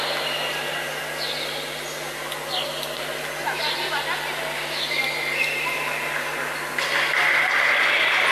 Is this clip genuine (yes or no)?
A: yes